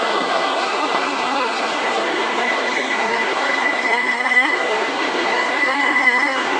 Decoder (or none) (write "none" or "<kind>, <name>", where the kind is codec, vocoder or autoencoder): codec, SNAC